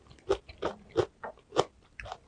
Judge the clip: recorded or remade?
recorded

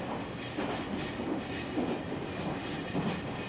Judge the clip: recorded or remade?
recorded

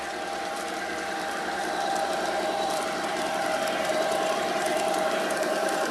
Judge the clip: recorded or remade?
remade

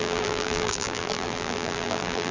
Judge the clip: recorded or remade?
remade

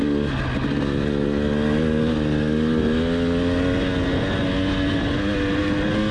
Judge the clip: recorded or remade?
recorded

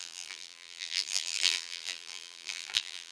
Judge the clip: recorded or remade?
remade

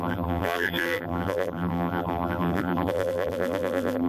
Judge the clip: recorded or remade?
remade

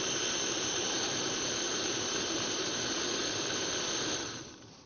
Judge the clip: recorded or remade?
remade